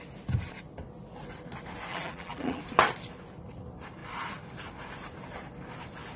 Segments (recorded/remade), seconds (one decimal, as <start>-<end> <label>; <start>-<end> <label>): 0.0-1.9 recorded; 1.9-2.6 remade; 2.6-6.2 recorded